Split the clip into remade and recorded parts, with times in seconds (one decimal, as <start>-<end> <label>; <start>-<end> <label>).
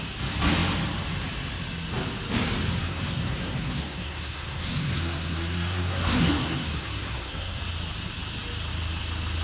0.0-2.8 recorded; 2.8-7.6 remade; 7.6-9.4 recorded